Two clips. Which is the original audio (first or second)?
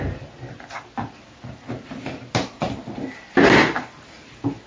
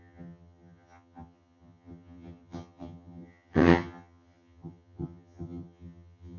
first